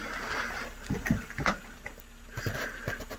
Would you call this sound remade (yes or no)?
no